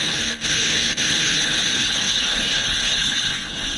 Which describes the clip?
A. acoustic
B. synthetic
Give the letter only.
B